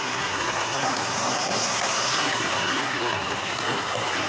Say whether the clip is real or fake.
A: fake